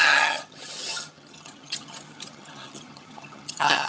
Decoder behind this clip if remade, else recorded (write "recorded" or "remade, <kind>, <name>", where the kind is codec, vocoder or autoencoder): remade, vocoder, HiFi-GAN